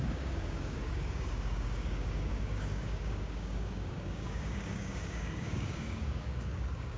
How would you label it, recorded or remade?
remade